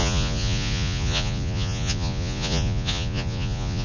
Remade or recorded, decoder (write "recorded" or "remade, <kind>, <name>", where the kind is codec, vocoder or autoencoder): remade, vocoder, Vocos